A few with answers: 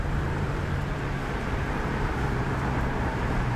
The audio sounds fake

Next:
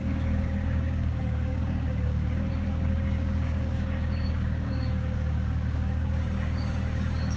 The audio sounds fake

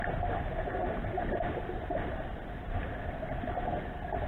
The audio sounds real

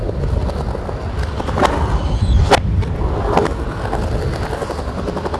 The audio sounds real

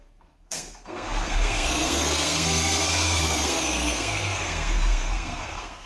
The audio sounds fake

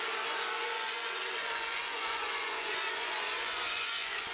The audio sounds fake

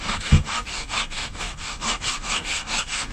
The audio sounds fake